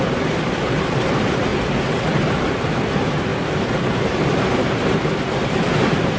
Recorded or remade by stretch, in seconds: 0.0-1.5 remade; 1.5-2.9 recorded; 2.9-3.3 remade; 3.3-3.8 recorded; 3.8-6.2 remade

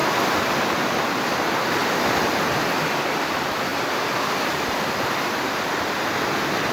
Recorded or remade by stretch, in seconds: 0.0-6.7 recorded

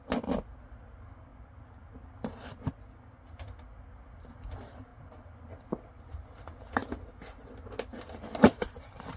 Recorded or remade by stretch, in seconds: 0.0-9.2 recorded

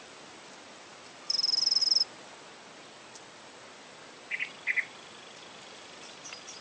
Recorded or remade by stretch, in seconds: 0.0-1.8 remade; 1.8-5.8 recorded; 5.8-6.6 remade

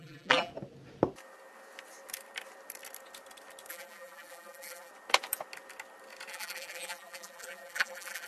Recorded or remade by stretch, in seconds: 0.0-0.5 remade; 0.5-3.7 recorded; 3.7-4.9 remade; 4.9-6.3 recorded; 6.3-8.3 remade